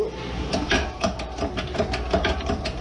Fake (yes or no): no